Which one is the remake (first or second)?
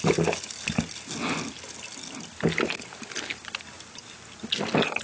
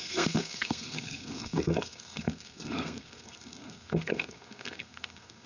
second